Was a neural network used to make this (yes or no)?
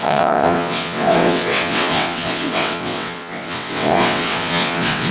yes